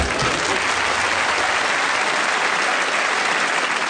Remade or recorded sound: recorded